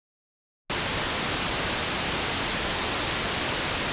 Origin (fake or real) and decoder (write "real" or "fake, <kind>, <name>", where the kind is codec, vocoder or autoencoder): real